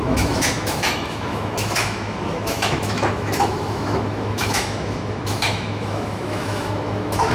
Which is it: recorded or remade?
remade